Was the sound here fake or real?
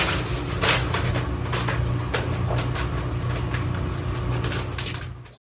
real